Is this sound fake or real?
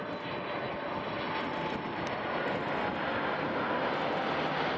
real